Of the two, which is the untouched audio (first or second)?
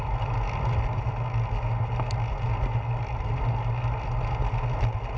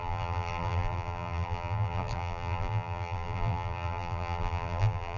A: first